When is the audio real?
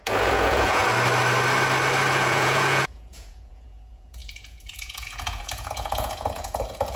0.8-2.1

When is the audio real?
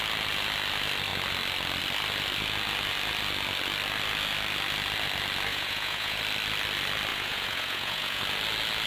0.0-5.5; 6.2-7.1; 8.2-8.9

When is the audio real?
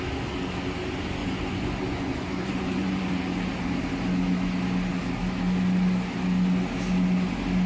0.0-1.2; 3.1-7.7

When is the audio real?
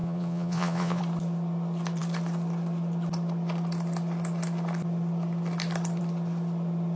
1.0-7.0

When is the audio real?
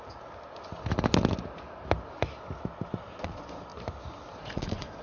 0.0-3.0; 3.7-4.3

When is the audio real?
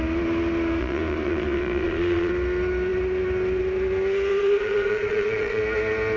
0.0-0.8; 2.3-4.3; 5.6-6.2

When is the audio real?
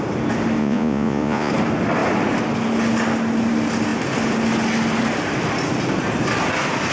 0.0-0.6; 1.5-6.9